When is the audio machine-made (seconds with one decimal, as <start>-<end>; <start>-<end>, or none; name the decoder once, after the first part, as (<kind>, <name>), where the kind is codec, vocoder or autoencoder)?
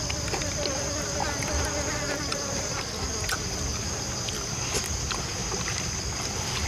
none